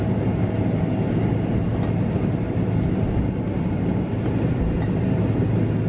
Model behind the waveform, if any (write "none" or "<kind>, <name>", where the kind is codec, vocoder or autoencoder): none